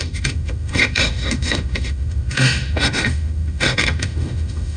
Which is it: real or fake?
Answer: fake